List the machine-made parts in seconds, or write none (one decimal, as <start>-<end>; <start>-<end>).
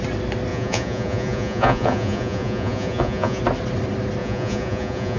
0.5-3.4; 4.2-5.2